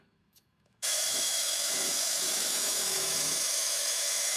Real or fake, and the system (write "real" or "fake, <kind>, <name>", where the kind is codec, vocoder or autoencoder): fake, autoencoder, DAC-VAE